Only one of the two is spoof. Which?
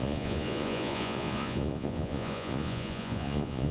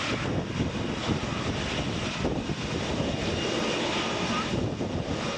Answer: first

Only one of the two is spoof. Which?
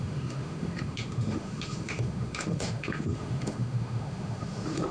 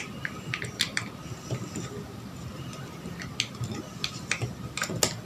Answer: first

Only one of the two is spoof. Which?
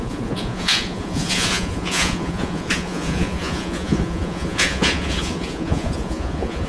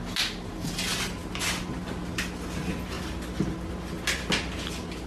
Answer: first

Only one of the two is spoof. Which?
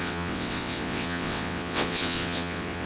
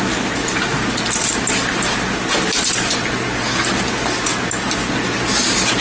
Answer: first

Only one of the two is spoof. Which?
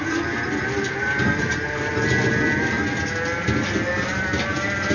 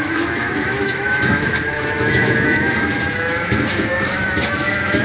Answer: second